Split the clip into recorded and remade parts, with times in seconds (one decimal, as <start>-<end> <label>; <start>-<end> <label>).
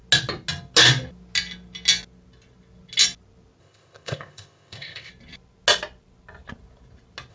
0.0-3.6 recorded; 3.6-5.1 remade; 5.1-7.3 recorded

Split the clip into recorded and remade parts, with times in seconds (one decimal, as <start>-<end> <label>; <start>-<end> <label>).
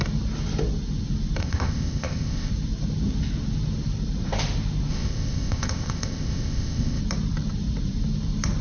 0.0-1.4 recorded; 1.4-2.5 remade; 2.5-4.9 recorded; 4.9-7.0 remade; 7.0-8.6 recorded